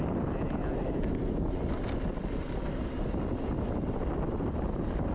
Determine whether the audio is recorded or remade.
recorded